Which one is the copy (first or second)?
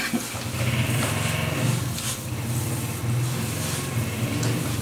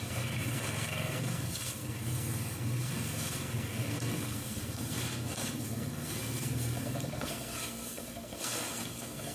second